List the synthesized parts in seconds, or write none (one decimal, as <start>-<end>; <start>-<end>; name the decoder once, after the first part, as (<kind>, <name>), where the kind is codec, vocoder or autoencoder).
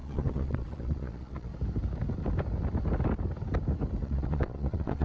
0.0-1.5 (vocoder, Vocos); 4.0-5.0